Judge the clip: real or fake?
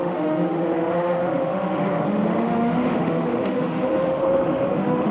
fake